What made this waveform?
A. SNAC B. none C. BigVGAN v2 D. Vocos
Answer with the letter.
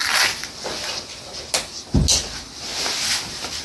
B